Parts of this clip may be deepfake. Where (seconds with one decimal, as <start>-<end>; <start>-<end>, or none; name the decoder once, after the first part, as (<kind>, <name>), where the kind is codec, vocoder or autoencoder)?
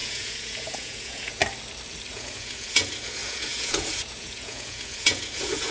0.0-1.4 (vocoder, Vocos); 2.1-5.7